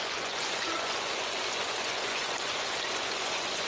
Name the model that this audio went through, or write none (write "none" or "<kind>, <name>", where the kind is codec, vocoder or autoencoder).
vocoder, Vocos